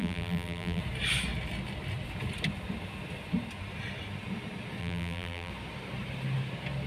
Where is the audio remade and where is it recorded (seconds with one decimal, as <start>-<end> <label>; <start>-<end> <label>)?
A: 0.0-0.8 remade; 0.8-4.8 recorded; 4.8-5.5 remade; 5.5-6.9 recorded